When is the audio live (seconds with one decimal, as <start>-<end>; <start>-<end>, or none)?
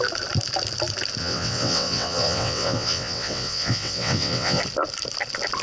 0.0-1.2; 4.6-5.6